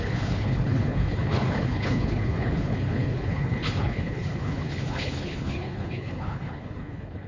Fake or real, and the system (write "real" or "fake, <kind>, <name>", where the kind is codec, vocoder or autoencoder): fake, codec, HILCodec